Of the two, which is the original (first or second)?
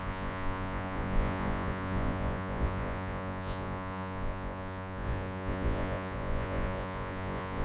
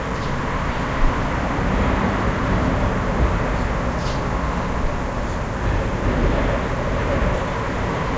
second